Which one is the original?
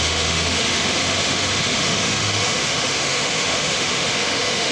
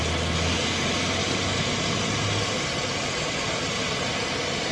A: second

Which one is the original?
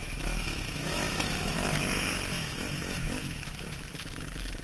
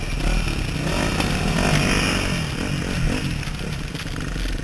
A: second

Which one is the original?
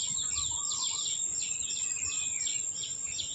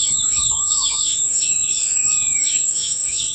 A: first